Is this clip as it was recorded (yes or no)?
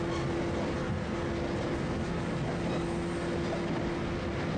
yes